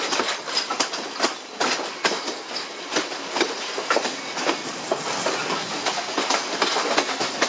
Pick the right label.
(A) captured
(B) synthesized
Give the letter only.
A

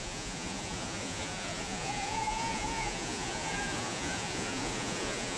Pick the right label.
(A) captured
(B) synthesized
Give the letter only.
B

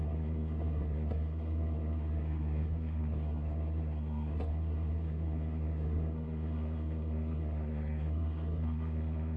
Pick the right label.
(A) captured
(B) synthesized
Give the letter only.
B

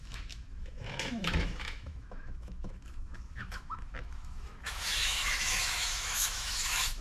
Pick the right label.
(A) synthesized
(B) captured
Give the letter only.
A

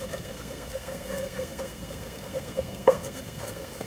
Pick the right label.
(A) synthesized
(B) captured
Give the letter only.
A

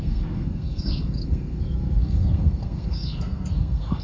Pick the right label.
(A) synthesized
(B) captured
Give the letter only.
A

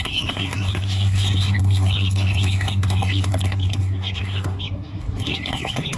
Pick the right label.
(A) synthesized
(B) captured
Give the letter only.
A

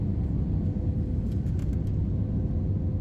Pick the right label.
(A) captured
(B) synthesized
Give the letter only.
A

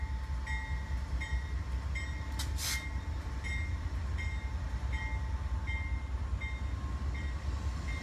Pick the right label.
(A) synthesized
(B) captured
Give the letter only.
B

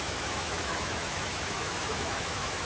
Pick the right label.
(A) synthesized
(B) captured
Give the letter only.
A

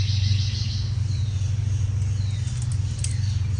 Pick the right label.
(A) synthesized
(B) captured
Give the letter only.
B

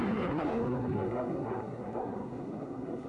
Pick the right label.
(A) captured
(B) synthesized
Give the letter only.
B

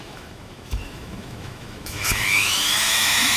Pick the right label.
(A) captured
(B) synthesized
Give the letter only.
B